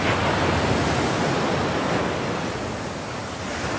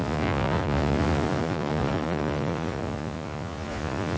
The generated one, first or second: second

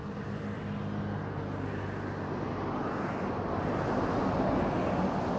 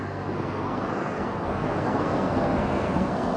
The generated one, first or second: second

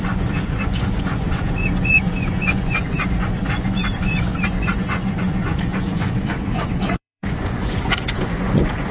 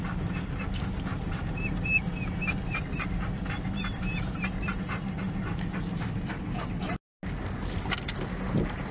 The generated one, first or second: first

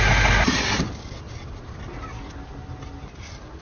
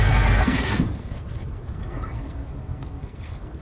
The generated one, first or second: second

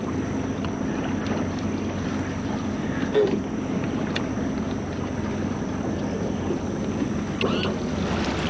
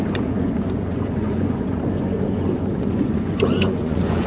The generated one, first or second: second